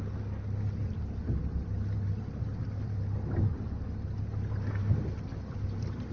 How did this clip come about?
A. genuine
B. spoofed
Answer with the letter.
A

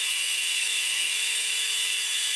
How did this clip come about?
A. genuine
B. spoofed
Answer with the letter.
B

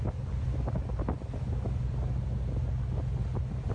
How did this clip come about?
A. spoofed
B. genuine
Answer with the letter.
B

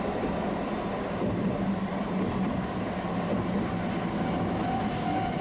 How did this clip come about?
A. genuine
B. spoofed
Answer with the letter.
B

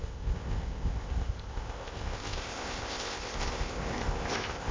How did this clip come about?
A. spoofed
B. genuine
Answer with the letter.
A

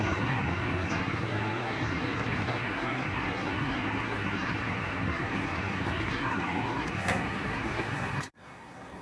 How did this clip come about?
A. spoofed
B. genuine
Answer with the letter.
A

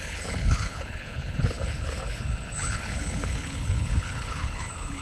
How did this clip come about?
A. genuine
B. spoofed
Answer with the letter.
B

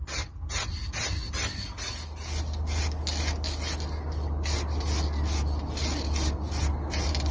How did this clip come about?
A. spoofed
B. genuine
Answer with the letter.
B